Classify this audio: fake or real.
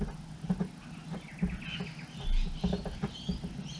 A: real